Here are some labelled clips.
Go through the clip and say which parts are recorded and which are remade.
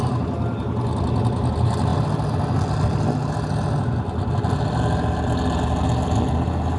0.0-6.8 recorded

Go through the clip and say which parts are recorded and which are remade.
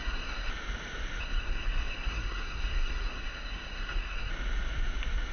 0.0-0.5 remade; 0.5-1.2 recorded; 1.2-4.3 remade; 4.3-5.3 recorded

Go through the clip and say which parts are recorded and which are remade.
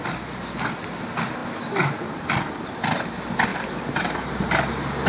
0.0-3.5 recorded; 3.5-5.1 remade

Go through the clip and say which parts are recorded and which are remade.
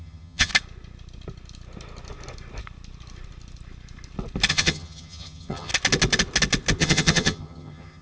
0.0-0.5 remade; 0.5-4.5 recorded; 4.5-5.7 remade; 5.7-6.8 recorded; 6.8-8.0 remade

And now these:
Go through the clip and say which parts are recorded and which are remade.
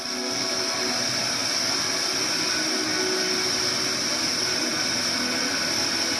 0.0-6.2 recorded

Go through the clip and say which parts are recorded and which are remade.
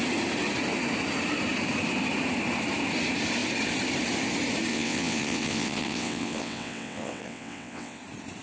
0.0-4.7 recorded; 4.7-8.0 remade; 8.0-8.4 recorded